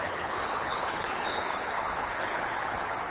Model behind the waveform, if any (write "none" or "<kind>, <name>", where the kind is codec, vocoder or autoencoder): codec, HILCodec